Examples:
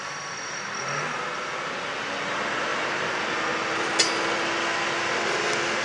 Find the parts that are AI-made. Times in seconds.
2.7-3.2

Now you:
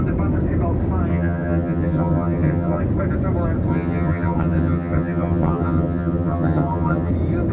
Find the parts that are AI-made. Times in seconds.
1.1-2.8; 3.7-7.1

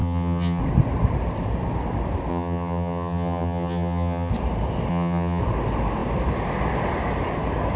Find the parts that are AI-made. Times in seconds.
0.0-0.6; 2.3-4.3; 4.9-5.4

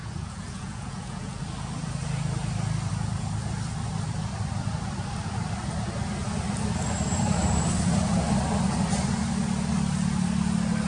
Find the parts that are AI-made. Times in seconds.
0.0-1.4